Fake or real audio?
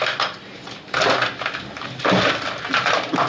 real